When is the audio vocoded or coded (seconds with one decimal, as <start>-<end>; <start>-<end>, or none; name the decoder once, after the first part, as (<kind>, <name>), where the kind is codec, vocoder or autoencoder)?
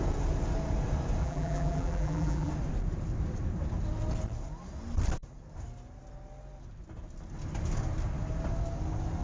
1.2-2.5 (vocoder, BigVGAN v2)